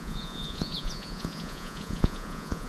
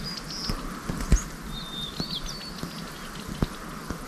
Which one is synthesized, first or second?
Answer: first